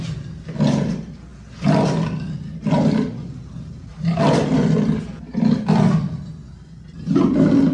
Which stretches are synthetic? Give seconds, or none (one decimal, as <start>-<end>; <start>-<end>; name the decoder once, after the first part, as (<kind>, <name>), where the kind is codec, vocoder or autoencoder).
none